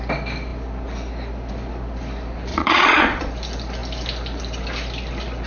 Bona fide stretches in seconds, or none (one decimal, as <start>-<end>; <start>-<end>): 0.0-2.5; 3.3-5.5